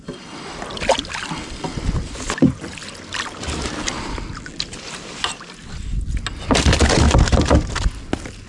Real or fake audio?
real